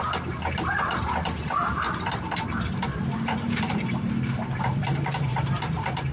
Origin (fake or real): fake